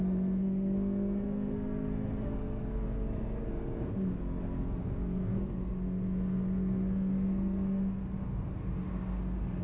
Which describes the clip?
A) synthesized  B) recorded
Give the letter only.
A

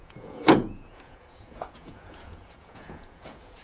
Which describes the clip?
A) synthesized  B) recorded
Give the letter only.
A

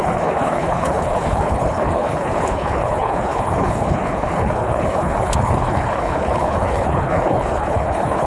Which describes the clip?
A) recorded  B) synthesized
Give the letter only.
B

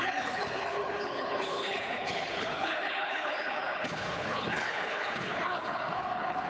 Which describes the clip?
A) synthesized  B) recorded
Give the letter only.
A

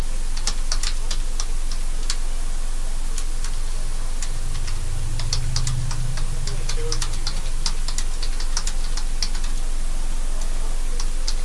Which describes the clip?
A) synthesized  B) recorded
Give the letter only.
B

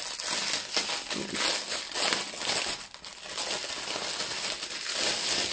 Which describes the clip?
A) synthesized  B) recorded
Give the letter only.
B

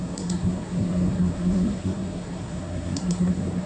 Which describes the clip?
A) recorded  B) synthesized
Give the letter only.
B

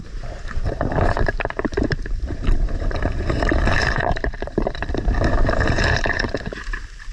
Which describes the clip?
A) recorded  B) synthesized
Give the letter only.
B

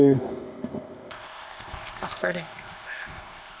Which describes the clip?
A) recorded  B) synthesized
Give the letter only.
B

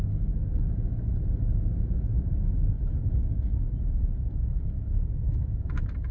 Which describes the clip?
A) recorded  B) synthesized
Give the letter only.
B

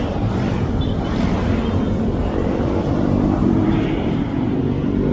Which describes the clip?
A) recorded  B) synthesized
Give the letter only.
B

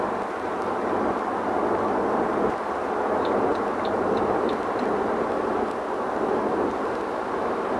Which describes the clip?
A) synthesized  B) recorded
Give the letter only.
B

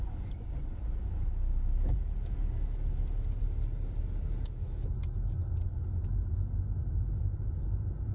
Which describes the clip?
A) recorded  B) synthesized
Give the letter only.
A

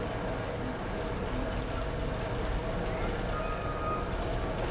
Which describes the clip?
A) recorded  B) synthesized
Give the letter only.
A